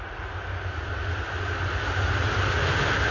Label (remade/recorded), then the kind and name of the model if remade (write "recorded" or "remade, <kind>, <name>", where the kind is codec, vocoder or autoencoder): recorded